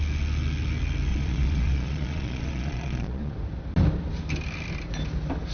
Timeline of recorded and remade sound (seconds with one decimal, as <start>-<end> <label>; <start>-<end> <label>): 0.0-1.1 recorded; 1.1-3.3 remade; 3.3-5.5 recorded